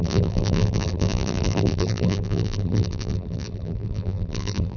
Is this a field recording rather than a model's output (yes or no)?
no